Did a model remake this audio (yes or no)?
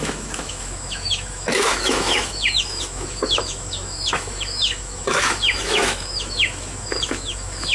yes